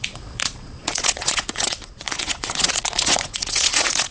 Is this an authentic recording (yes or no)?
no